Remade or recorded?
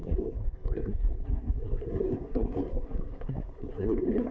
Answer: remade